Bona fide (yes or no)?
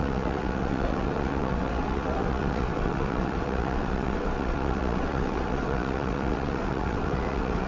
no